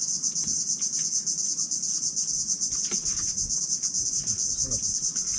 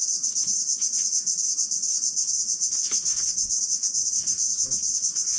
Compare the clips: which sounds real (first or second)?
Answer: first